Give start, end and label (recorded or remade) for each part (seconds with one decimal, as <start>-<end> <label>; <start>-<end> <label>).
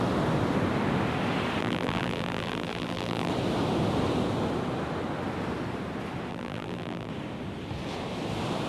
0.0-1.6 recorded; 1.6-3.3 remade; 3.3-6.3 recorded; 6.3-7.1 remade; 7.1-8.7 recorded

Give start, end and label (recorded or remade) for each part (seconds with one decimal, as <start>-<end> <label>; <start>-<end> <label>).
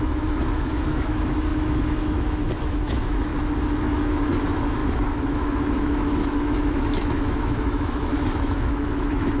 0.0-3.3 remade; 3.3-3.8 recorded; 3.8-9.4 remade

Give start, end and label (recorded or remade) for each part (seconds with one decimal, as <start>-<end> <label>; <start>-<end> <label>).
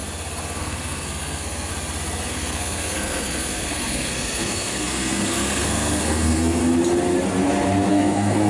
0.0-0.6 recorded; 0.6-1.7 remade; 1.7-2.3 recorded; 2.3-6.6 remade; 6.6-7.9 recorded; 7.9-8.5 remade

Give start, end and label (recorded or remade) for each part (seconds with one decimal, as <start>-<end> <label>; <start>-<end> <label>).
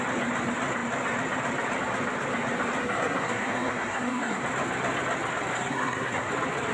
0.0-2.8 recorded; 2.8-4.4 remade; 4.4-5.5 recorded; 5.5-6.3 remade; 6.3-6.7 recorded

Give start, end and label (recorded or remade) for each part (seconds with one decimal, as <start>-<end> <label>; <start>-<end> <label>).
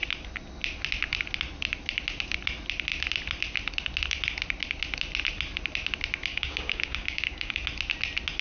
0.0-6.3 recorded; 6.3-7.6 remade; 7.6-8.4 recorded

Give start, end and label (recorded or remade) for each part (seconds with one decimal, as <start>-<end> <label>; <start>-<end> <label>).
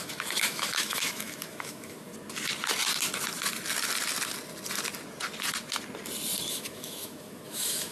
0.0-2.1 remade; 2.1-6.5 recorded; 6.5-7.9 remade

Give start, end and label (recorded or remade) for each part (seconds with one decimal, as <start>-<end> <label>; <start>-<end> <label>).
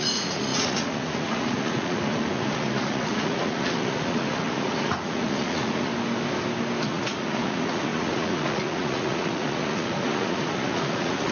0.0-5.9 remade; 5.9-6.8 recorded; 6.8-11.3 remade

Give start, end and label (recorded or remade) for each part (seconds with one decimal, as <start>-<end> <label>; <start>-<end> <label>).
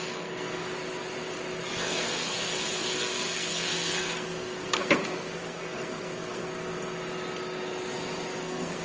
0.0-0.6 remade; 0.6-1.8 recorded; 1.8-6.5 remade; 6.5-8.4 recorded; 8.4-8.8 remade